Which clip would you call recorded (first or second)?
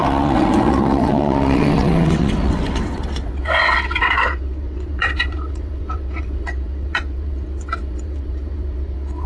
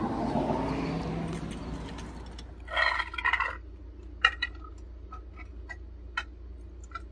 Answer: second